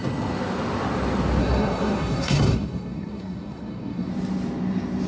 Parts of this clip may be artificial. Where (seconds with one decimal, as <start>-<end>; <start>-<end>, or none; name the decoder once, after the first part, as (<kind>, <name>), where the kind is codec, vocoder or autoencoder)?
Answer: 1.4-4.1 (codec, SNAC)